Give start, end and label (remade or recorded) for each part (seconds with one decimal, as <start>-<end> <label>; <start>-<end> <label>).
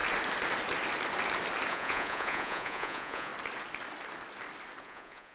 0.0-1.7 recorded; 1.7-3.3 remade; 3.3-4.8 recorded; 4.8-5.3 remade